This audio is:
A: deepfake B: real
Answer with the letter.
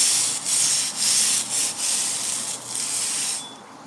B